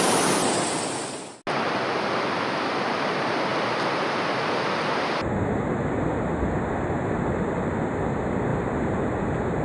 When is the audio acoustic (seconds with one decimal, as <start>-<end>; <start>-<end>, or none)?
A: 0.0-8.5; 9.1-9.6